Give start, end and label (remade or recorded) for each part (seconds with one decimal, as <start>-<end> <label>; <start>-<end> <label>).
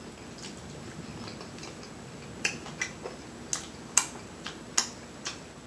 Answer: 0.0-5.7 recorded